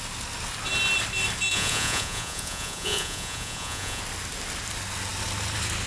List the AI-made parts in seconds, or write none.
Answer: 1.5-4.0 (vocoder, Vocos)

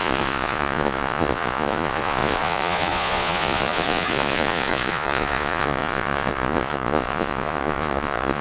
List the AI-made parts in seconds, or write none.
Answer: 0.0-8.4 (vocoder, Vocos)

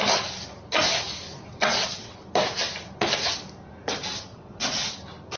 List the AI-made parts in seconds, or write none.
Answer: 1.5-2.2 (vocoder, WaveNeXt); 4.3-4.9

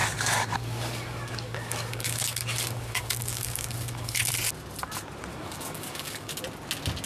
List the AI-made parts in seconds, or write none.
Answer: 0.0-4.3 (codec, DAC); 5.3-6.4

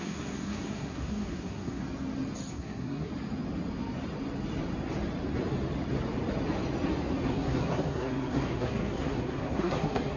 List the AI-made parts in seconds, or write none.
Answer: 0.0-1.8 (codec, SNAC); 2.5-3.1; 7.3-10.2

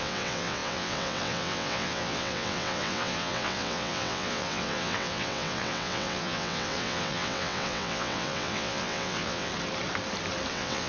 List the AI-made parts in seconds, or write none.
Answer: 0.0-9.5 (vocoder, WaveNeXt); 10.5-10.9

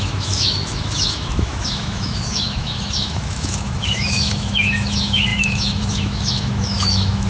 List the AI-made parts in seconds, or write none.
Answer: 0.0-7.3 (autoencoder, DAC-VAE)

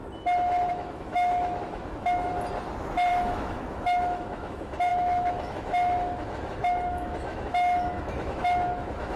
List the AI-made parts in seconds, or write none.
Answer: 0.7-2.3 (autoencoder, DAC-VAE); 3.1-9.2